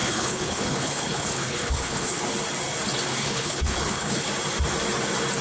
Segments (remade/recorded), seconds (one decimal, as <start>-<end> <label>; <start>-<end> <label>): 0.0-2.2 remade; 2.2-3.1 recorded; 3.1-4.3 remade; 4.3-5.4 recorded